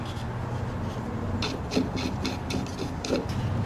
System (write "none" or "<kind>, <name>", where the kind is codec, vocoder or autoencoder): none